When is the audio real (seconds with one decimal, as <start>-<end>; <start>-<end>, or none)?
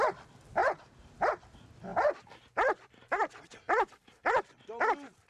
0.0-0.6; 1.3-1.9; 4.5-5.3